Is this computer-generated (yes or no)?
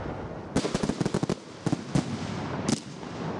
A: no